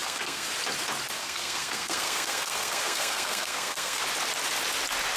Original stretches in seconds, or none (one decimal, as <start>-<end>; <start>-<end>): 0.5-1.2; 4.0-5.2